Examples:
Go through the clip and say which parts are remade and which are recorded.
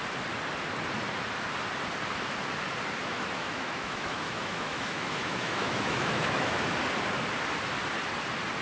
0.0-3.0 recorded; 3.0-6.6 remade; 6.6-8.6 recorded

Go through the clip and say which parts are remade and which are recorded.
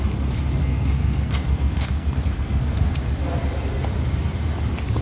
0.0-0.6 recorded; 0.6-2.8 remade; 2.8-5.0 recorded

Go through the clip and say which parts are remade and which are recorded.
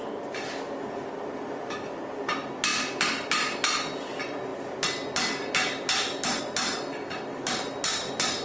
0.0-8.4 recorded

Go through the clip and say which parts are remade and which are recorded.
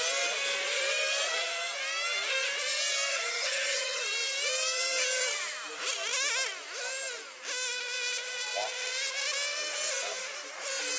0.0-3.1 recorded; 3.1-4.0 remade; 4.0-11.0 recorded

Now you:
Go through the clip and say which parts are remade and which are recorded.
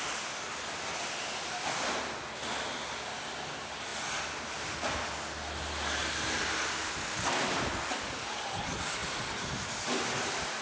0.0-10.6 recorded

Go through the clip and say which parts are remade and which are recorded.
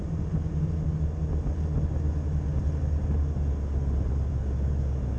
0.0-5.2 recorded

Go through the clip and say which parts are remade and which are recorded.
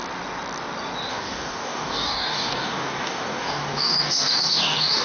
0.0-1.1 recorded; 1.1-5.0 remade